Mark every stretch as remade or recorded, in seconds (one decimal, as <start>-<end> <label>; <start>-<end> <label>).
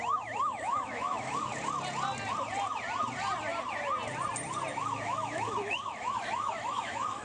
0.0-1.5 remade; 1.5-4.7 recorded; 4.7-7.2 remade